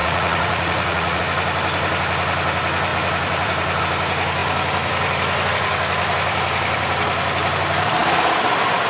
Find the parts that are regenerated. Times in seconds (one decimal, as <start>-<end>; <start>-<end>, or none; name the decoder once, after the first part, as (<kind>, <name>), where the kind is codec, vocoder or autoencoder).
0.0-1.2 (vocoder, Vocos)